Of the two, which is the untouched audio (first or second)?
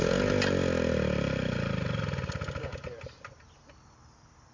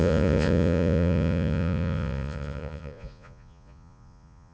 first